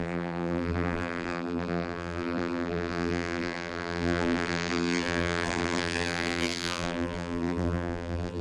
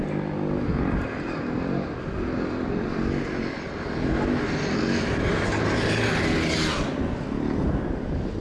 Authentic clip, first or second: second